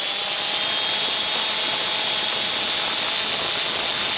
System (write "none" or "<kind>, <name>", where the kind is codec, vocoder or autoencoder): none